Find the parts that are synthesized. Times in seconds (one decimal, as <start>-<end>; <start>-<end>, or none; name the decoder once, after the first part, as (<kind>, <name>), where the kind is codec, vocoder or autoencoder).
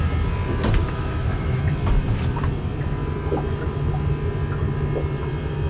0.8-1.6 (autoencoder, DAC-VAE)